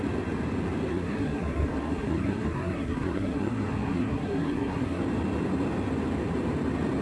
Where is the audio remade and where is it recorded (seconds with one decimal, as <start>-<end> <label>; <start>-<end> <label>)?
0.0-0.9 recorded; 0.9-5.0 remade; 5.0-7.0 recorded